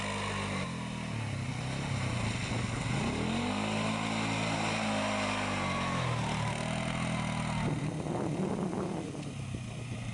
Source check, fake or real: real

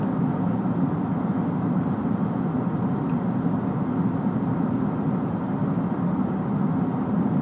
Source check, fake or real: real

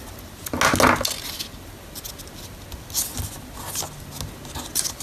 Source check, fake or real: real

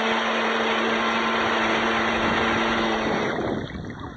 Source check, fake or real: real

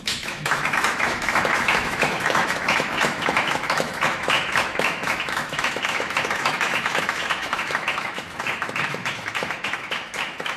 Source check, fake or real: fake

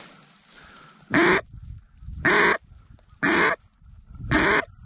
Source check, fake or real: real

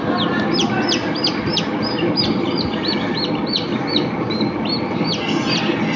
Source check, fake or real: fake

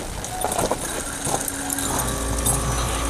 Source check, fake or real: real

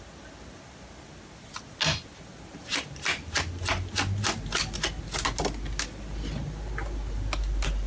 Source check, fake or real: real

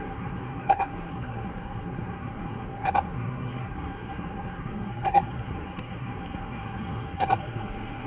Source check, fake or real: fake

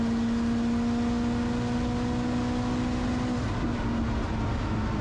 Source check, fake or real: real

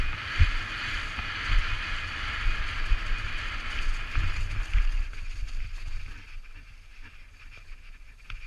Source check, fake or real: real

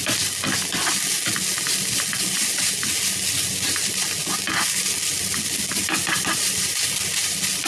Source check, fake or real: real